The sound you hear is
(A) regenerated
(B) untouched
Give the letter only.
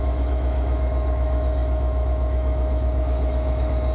A